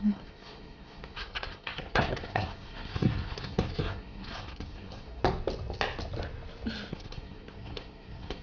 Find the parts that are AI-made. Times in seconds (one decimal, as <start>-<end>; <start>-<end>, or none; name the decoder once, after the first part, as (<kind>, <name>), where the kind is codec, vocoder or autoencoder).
0.0-5.2 (codec, SNAC); 6.9-8.4